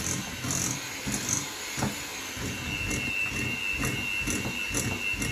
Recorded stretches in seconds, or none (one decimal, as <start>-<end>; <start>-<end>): 0.0-5.3